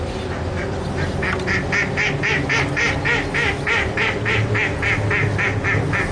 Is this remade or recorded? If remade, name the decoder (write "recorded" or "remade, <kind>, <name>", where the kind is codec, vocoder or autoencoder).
recorded